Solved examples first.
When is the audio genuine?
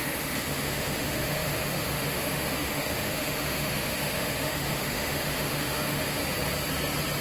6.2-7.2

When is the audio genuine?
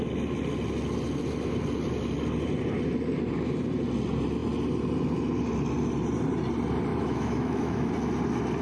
0.0-6.9; 7.9-8.6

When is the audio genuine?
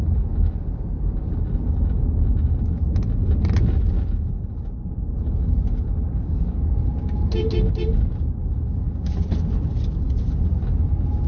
0.0-11.3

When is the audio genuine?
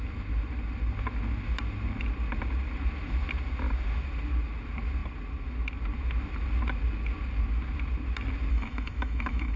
0.0-8.5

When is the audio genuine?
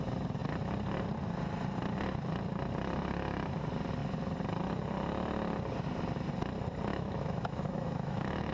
0.0-6.9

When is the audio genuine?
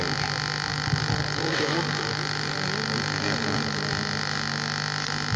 0.0-0.7; 3.9-5.4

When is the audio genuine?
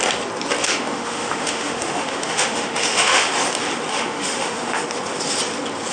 0.0-0.6; 3.3-3.9; 4.8-5.9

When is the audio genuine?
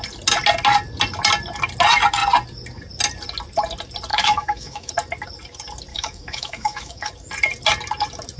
0.0-4.1; 4.9-5.9; 7.1-8.4